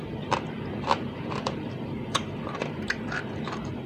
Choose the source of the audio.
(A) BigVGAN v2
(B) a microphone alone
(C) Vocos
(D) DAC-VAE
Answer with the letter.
A